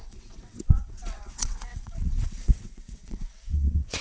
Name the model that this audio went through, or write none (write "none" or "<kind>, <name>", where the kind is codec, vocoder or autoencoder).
vocoder, WaveNeXt